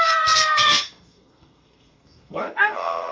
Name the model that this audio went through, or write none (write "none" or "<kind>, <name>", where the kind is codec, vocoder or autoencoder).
codec, SNAC